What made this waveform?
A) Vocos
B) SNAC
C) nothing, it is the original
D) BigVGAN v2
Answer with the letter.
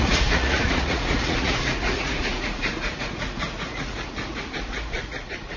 A